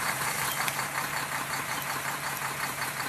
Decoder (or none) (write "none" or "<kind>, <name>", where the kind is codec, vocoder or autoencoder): vocoder, BigVGAN v2